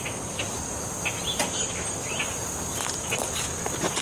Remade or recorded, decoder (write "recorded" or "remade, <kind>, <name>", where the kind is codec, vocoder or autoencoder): recorded